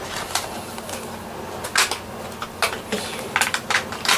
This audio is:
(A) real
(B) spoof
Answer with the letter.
A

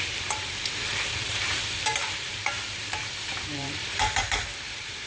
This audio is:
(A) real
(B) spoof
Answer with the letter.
B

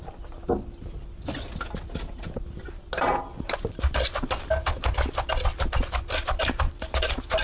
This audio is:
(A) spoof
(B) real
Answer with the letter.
B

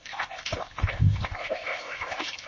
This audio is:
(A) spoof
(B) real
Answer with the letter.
A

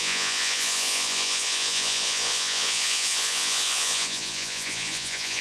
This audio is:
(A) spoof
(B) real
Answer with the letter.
A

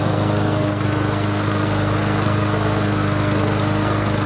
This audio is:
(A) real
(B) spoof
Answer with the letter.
B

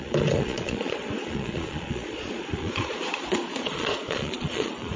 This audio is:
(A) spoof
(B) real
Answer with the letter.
A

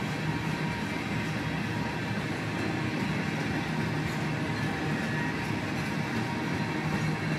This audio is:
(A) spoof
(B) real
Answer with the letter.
B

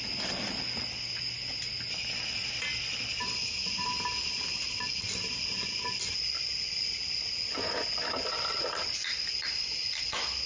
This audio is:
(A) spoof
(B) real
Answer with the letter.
B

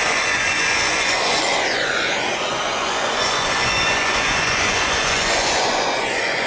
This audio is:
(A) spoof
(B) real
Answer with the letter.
A